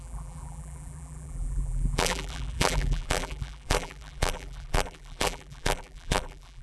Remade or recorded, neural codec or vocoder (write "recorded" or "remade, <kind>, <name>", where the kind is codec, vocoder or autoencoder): remade, vocoder, BigVGAN v2